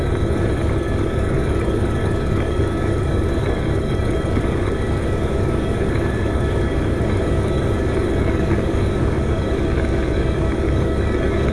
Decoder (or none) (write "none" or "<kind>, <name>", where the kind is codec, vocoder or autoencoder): codec, DAC